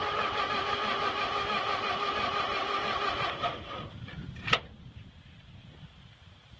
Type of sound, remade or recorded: recorded